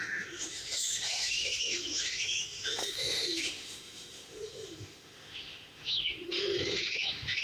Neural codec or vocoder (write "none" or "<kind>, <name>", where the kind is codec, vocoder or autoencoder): autoencoder, DAC-VAE